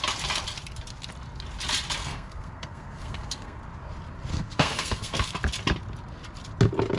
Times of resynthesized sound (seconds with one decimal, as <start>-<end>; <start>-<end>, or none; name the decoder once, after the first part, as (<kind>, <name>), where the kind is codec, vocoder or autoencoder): 2.0-3.6 (codec, SNAC); 4.3-5.3

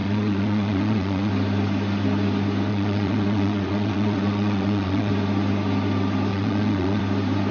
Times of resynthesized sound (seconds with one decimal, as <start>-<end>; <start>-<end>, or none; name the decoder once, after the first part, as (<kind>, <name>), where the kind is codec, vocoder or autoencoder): 0.0-1.3 (vocoder, Vocos); 2.7-5.1; 6.3-7.0